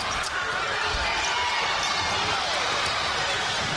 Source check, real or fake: real